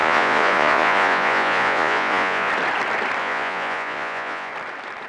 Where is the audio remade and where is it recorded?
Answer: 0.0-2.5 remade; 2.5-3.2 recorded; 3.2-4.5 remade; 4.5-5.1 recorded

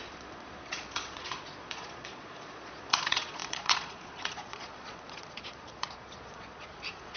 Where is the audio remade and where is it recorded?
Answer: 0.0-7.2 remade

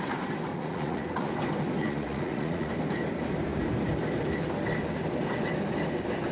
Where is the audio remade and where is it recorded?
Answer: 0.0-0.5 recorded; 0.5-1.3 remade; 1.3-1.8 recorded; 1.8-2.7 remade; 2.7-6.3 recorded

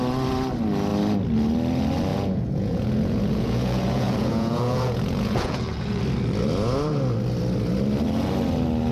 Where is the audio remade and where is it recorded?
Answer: 0.0-2.1 recorded; 2.1-6.0 remade; 6.0-8.9 recorded

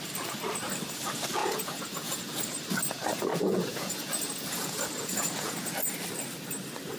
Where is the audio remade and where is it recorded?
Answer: 0.0-1.4 recorded; 1.4-2.6 remade; 2.6-3.3 recorded; 3.3-5.7 remade; 5.7-7.0 recorded

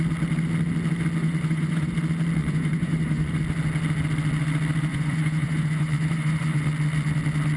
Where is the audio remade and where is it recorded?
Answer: 0.0-1.2 recorded; 1.2-1.9 remade; 1.9-2.4 recorded; 2.4-3.4 remade; 3.4-4.9 recorded; 4.9-6.6 remade; 6.6-7.6 recorded

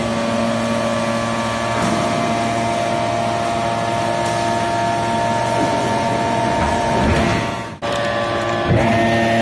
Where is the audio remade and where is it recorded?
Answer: 0.0-5.4 recorded; 5.4-7.1 remade; 7.1-9.4 recorded